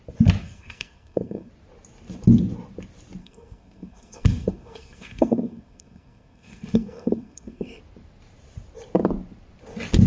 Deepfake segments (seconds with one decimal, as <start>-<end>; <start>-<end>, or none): 0.4-1.5; 3.2-7.8